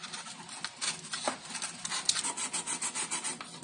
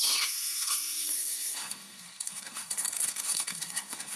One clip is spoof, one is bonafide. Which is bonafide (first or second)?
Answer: first